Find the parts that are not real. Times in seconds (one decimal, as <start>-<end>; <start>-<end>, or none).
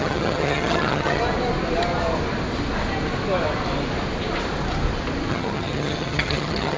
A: 0.0-1.2; 5.3-6.8